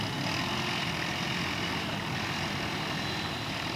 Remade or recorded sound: recorded